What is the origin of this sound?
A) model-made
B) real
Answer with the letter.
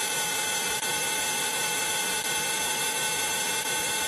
B